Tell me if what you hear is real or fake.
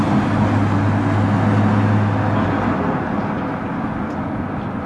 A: real